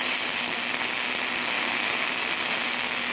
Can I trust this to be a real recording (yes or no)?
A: yes